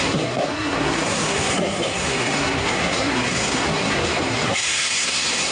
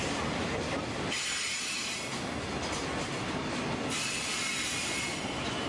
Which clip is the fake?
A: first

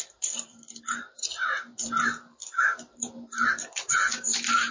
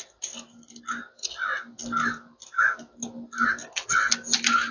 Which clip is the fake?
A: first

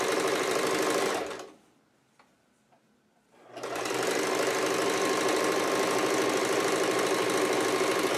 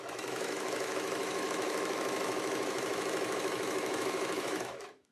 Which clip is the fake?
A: second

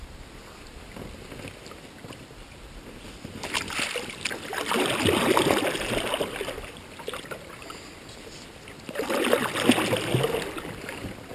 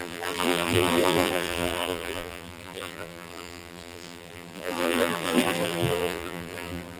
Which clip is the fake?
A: second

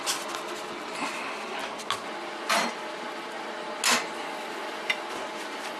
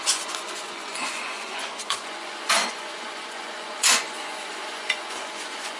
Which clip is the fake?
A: second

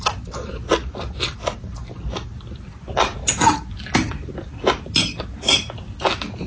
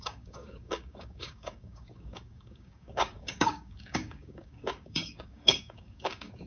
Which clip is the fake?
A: second